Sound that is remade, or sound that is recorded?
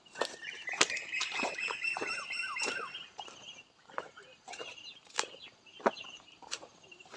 remade